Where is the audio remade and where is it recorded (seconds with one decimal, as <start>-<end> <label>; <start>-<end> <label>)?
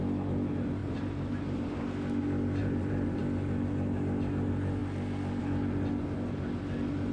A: 0.0-0.8 recorded; 0.8-1.8 remade; 1.8-2.6 recorded; 2.6-3.2 remade; 3.2-7.1 recorded